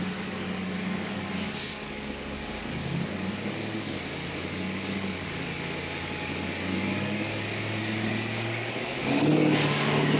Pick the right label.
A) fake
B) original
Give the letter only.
A